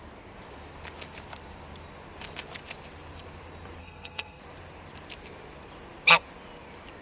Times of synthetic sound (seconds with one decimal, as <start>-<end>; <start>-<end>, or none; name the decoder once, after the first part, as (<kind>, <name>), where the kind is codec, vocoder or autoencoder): 3.8-4.4 (codec, SNAC)